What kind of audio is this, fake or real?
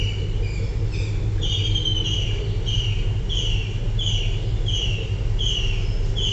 real